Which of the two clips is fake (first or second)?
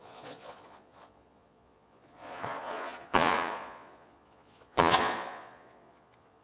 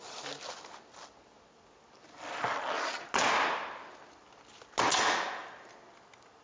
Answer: first